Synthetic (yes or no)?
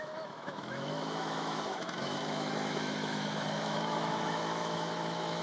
yes